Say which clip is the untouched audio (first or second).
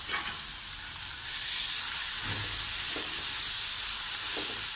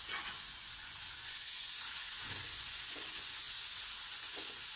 first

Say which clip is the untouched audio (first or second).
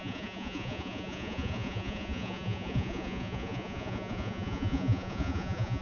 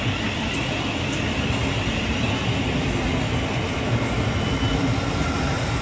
second